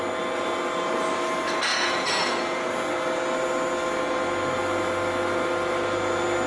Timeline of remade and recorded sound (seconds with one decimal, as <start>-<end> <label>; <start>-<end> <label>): 0.0-1.7 recorded; 1.7-2.7 remade; 2.7-6.5 recorded